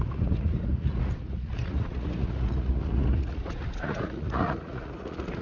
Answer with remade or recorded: remade